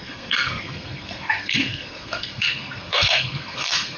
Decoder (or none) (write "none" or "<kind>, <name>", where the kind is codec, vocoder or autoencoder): codec, SNAC